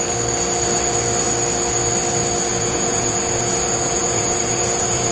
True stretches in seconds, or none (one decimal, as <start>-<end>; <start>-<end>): 0.0-2.5